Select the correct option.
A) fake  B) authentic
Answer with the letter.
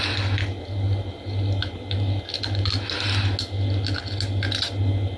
B